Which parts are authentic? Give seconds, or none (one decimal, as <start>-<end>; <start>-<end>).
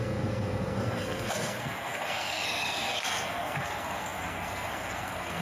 none